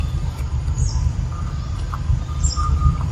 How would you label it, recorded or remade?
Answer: recorded